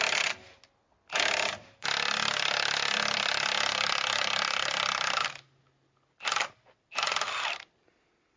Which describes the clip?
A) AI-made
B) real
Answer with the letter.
B